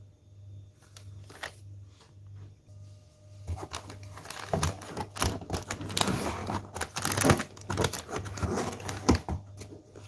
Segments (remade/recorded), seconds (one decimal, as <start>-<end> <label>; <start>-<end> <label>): 0.0-10.1 recorded